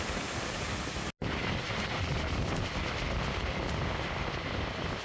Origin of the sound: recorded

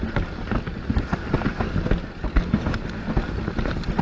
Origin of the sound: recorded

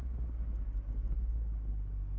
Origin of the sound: recorded